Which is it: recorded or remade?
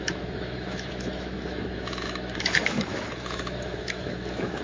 remade